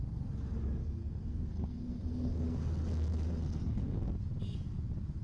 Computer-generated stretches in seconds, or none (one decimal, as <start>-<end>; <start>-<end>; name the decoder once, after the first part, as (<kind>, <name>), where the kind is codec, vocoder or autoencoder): 1.0-4.1 (codec, SNAC)